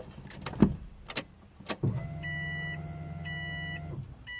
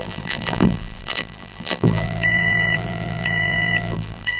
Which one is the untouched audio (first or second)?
first